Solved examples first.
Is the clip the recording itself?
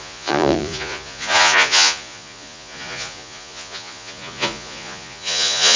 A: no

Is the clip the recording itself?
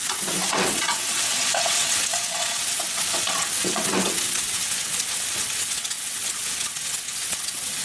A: no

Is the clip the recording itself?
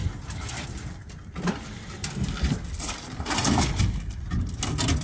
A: yes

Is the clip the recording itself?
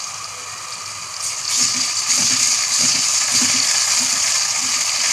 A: yes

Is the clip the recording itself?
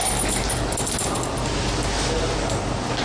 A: yes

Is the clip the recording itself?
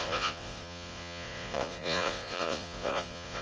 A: no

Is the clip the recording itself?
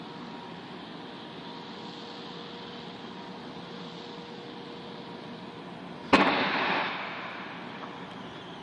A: yes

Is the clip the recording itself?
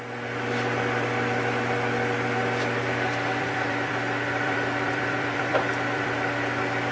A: no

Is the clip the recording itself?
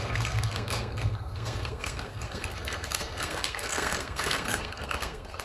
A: no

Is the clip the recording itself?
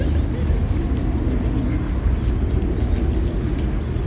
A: yes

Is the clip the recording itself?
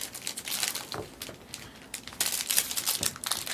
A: yes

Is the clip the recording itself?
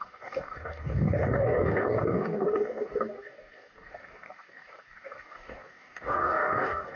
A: no